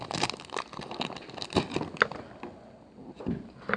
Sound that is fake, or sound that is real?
real